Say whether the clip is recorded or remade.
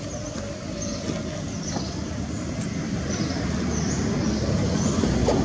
recorded